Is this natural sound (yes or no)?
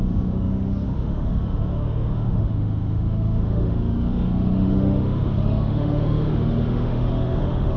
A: no